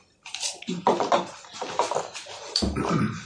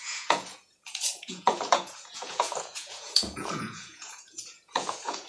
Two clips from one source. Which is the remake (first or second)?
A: second